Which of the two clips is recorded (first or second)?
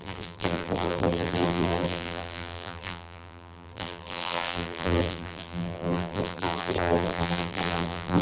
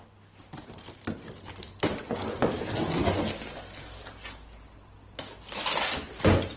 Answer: second